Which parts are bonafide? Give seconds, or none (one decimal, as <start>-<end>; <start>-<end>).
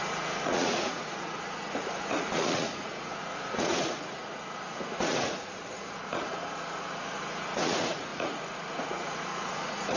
none